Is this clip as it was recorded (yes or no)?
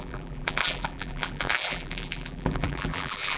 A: no